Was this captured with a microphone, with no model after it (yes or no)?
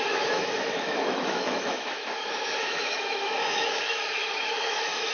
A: no